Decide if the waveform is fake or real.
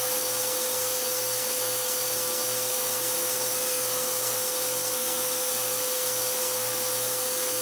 fake